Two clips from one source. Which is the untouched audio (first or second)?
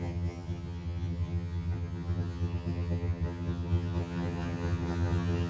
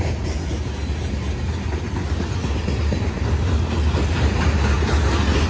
second